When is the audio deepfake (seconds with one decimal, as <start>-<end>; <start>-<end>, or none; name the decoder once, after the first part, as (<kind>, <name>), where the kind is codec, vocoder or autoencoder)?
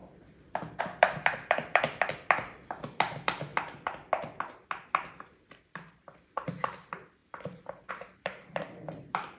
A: 0.8-3.5 (vocoder, BigVGAN v2); 5.9-9.4